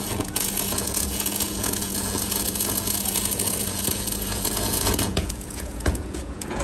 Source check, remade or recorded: remade